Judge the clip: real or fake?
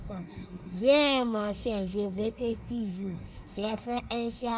fake